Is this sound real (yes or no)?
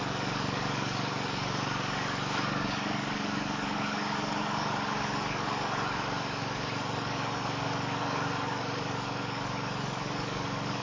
no